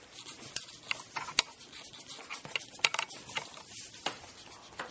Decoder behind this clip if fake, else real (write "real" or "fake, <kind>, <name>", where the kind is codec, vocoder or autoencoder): real